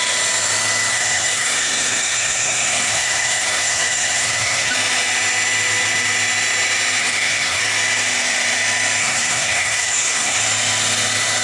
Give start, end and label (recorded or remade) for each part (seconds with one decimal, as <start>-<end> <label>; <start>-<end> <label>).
0.0-0.9 recorded; 0.9-4.7 remade; 4.7-7.0 recorded; 7.0-7.6 remade; 7.6-9.0 recorded; 9.0-10.4 remade; 10.4-11.4 recorded